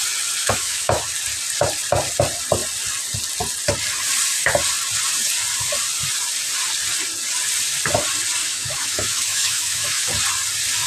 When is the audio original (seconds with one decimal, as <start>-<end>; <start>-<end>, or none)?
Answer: 0.0-0.4; 1.0-8.4; 10.1-10.9